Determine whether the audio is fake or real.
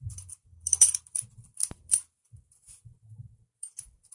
fake